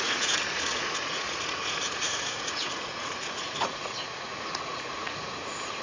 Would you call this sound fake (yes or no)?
yes